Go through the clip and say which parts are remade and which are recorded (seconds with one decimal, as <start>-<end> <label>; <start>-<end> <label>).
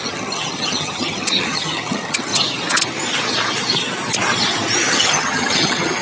0.0-2.3 remade; 2.3-4.9 recorded; 4.9-6.0 remade